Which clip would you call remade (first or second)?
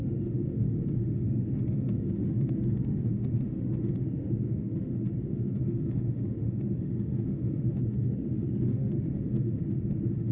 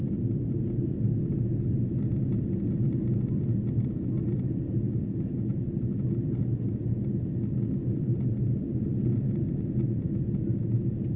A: first